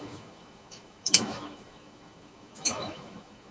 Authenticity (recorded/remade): remade